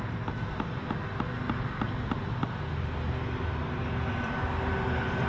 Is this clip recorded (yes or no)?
yes